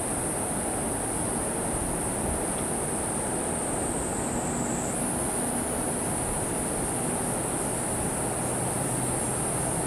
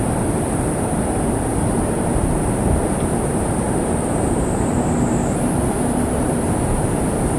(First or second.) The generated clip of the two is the second